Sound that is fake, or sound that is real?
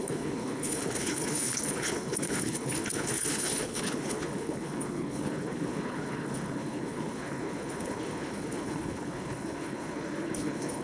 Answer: fake